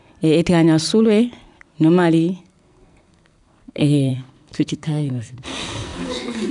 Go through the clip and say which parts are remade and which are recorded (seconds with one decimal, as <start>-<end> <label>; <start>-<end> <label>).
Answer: 0.0-2.4 recorded; 2.4-6.5 remade